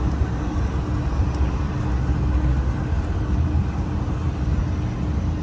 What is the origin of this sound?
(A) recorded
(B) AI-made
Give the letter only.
A